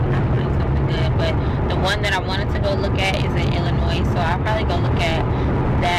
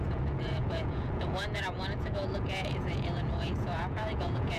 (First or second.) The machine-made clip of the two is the second